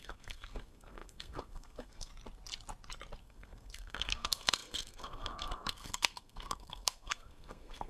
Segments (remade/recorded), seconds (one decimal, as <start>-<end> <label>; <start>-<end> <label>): 0.0-2.1 remade; 2.1-3.2 recorded; 3.2-7.9 remade